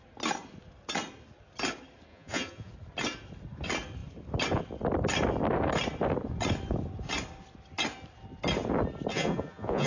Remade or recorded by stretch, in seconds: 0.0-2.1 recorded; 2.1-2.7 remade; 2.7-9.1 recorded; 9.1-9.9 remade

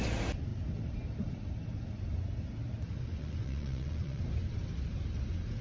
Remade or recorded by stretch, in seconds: 0.0-3.2 recorded; 3.2-4.2 remade; 4.2-5.6 recorded

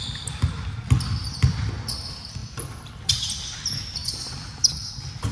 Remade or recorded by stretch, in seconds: 0.0-2.4 recorded; 2.4-2.9 remade; 2.9-5.3 recorded

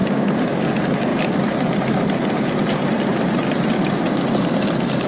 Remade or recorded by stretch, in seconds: 0.0-1.1 recorded; 1.1-3.7 remade; 3.7-5.1 recorded